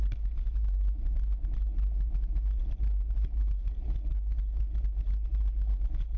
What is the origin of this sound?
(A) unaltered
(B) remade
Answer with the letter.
A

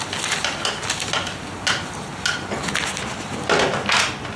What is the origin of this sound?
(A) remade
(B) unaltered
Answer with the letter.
B